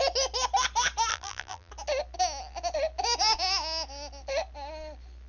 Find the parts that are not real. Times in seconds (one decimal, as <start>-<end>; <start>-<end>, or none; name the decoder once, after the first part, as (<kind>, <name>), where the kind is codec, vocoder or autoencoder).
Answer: 1.1-1.7 (vocoder, BigVGAN v2)

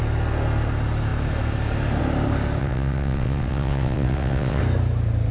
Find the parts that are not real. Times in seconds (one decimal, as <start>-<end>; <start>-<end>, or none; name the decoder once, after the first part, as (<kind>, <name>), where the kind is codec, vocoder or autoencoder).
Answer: 2.6-4.6 (vocoder, WaveNeXt)

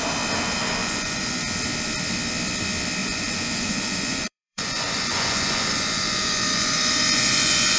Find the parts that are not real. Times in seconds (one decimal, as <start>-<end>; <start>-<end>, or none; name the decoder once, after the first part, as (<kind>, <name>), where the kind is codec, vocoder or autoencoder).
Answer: 0.8-1.4 (vocoder, Vocos); 3.0-7.8

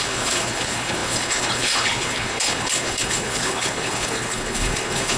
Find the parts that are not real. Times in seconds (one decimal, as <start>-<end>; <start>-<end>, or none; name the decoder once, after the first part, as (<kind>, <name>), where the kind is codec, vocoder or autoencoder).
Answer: 0.0-5.2 (codec, HILCodec)

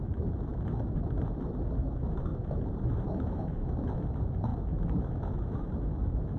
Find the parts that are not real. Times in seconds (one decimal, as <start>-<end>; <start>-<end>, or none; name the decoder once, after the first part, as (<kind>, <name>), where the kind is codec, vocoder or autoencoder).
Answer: 0.0-6.4 (autoencoder, DAC-VAE)